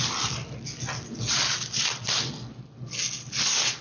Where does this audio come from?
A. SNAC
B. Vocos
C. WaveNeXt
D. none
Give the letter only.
D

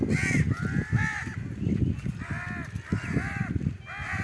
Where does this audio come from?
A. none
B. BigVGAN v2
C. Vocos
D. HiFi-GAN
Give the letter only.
A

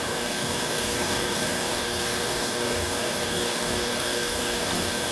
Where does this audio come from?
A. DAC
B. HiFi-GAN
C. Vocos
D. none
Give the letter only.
A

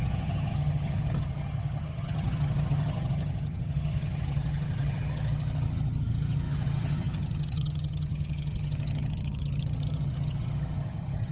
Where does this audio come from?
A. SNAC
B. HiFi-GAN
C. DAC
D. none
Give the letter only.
B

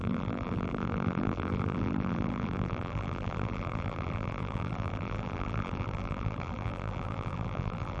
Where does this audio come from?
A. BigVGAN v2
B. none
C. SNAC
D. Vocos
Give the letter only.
A